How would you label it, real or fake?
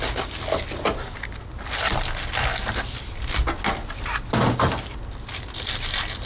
real